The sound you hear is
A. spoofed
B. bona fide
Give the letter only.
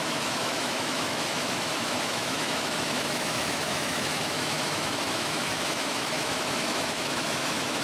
A